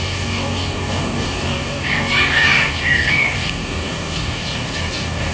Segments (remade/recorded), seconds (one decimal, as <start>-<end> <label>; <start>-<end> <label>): 0.0-5.3 remade